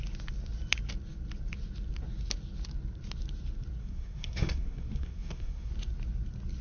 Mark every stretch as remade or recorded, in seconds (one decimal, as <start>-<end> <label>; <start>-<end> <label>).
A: 0.0-3.8 recorded; 3.8-5.7 remade; 5.7-6.6 recorded